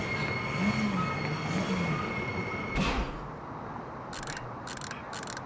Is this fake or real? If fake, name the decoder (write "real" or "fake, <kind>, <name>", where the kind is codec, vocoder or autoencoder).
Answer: real